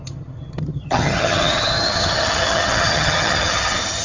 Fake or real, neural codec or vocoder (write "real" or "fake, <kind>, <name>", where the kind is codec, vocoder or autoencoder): fake, vocoder, HiFi-GAN